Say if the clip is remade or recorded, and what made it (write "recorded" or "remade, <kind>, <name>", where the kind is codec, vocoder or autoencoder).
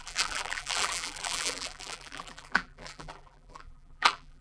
remade, vocoder, BigVGAN v2